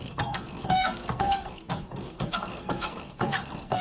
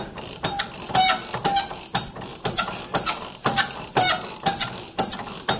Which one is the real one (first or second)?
second